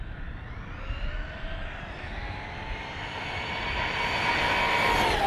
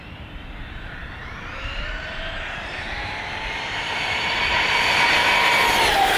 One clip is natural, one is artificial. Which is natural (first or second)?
first